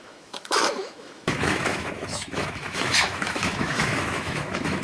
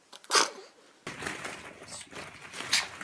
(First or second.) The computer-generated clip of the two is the first